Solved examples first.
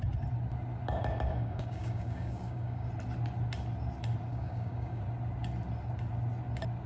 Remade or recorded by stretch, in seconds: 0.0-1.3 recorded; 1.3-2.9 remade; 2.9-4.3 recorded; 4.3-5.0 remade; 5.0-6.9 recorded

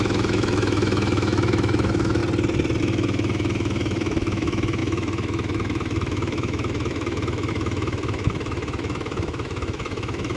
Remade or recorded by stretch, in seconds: 0.0-2.2 remade; 2.2-2.8 recorded; 2.8-10.4 remade

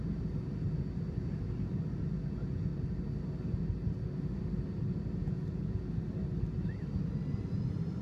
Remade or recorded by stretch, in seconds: 0.0-5.2 recorded; 5.2-5.8 remade; 5.8-8.0 recorded